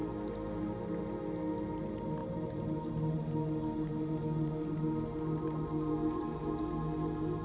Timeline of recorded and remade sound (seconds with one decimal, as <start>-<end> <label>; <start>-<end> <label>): 0.0-2.2 recorded; 2.2-6.6 remade; 6.6-7.4 recorded

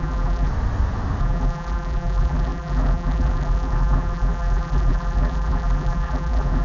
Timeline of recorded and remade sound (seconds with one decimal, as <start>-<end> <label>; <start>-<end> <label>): 0.0-0.5 remade; 0.5-1.2 recorded; 1.2-6.6 remade